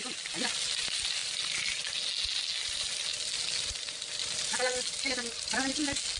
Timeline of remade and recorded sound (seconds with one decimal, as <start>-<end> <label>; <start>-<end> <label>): 0.0-6.2 recorded